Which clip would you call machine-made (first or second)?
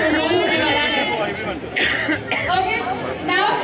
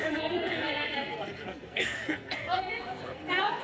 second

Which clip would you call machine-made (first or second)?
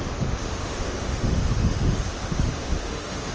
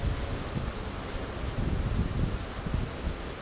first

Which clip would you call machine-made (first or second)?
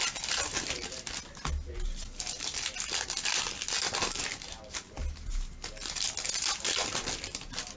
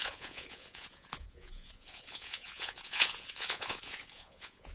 second